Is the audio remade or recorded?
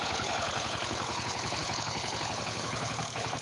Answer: remade